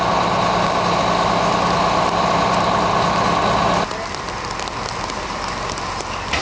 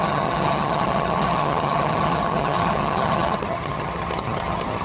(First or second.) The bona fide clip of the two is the first